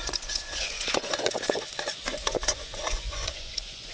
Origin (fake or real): fake